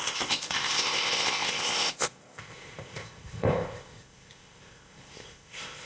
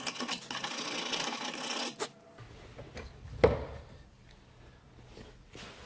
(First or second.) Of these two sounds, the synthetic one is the first